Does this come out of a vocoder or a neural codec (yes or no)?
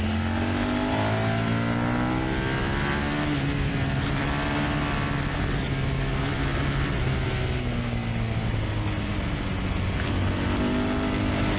no